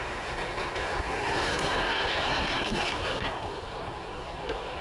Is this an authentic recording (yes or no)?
no